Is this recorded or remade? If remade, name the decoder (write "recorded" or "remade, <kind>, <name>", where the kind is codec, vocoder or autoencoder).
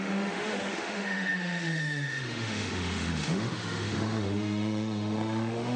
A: remade, autoencoder, DAC-VAE